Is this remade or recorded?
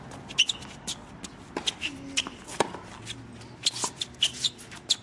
recorded